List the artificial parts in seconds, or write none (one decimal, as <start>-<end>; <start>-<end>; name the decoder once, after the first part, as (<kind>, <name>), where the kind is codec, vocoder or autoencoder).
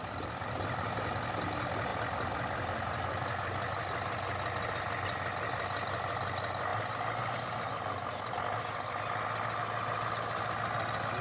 none